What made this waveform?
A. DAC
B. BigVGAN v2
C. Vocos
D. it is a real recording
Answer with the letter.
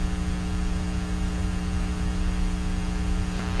D